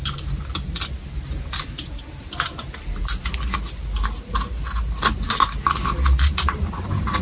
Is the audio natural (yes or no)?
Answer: yes